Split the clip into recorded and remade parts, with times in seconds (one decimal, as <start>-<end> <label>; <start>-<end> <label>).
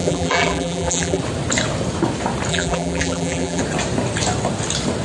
0.0-1.2 remade; 1.2-2.5 recorded; 2.5-3.6 remade; 3.6-5.0 recorded